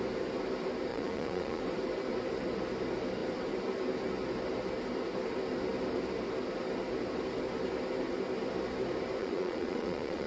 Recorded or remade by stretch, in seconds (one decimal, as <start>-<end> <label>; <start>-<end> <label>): 0.0-0.9 recorded; 0.9-1.6 remade; 1.6-9.2 recorded; 9.2-10.3 remade